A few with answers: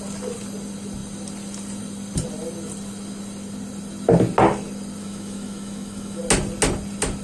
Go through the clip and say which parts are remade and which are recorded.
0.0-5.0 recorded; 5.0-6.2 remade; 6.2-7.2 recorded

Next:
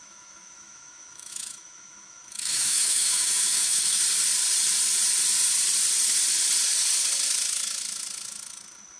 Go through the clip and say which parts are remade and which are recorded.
0.0-4.0 remade; 4.0-9.0 recorded